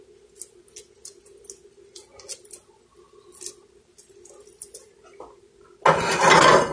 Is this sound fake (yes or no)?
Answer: no